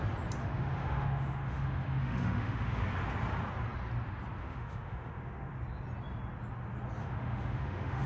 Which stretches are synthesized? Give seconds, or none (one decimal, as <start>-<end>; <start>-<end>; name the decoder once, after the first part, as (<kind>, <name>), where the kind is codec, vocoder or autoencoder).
0.4-2.8 (autoencoder, DAC-VAE); 4.4-5.5; 7.0-8.1